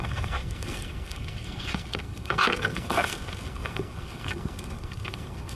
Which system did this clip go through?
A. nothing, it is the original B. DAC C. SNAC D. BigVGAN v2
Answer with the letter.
C